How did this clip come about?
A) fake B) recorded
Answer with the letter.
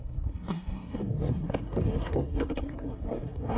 A